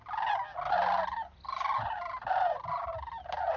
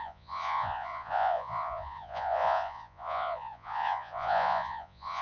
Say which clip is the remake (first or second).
second